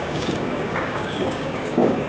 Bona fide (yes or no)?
no